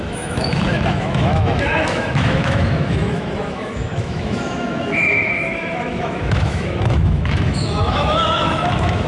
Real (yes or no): no